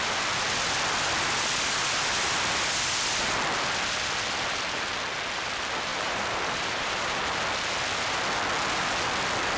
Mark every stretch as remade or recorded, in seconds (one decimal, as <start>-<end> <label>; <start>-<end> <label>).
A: 0.0-5.9 recorded; 5.9-7.2 remade; 7.2-9.6 recorded